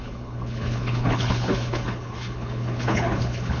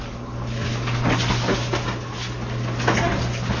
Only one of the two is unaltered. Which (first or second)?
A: second